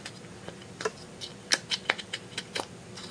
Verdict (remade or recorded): recorded